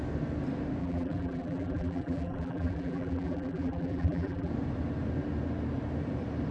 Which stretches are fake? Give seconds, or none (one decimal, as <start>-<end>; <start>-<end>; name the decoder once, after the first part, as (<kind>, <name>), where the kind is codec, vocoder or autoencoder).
0.8-4.5 (vocoder, BigVGAN v2)